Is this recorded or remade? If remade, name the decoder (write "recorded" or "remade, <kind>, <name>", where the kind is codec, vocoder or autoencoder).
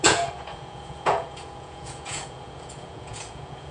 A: remade, vocoder, Vocos